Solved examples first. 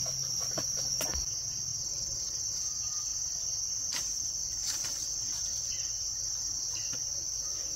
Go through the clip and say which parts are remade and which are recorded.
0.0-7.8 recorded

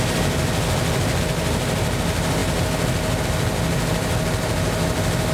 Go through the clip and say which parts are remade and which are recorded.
0.0-5.3 recorded